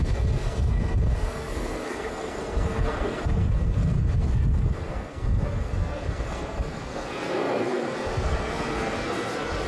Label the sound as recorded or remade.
remade